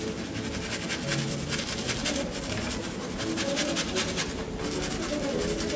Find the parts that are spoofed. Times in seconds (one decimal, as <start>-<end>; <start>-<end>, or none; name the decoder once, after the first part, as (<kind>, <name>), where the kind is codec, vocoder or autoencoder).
1.1-3.1 (vocoder, BigVGAN v2)